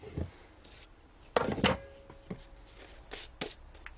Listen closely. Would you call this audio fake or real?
real